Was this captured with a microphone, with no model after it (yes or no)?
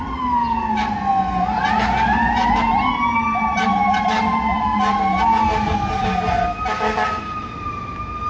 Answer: yes